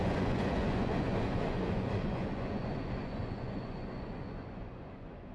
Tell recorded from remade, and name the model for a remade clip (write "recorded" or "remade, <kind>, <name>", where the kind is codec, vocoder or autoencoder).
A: remade, vocoder, Vocos